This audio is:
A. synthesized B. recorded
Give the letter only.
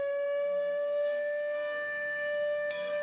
A